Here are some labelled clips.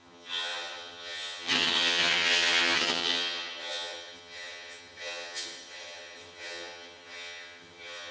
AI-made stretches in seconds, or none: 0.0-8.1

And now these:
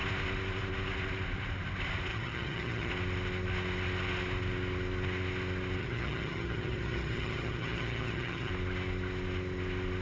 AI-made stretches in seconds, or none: 2.1-2.9; 5.8-8.5

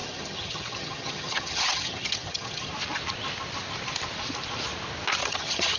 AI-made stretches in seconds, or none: 0.0-2.7; 5.2-5.8

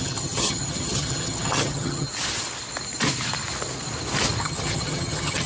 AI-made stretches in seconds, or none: 0.0-2.1; 4.4-5.5

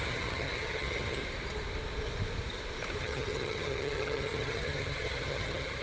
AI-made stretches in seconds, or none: 0.0-1.2; 3.0-5.8

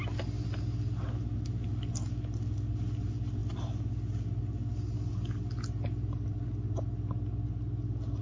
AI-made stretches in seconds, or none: none

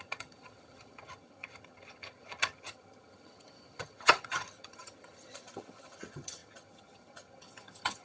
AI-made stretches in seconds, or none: 0.0-8.0